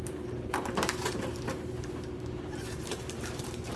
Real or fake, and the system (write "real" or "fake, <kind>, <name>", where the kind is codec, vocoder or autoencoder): fake, vocoder, BigVGAN v2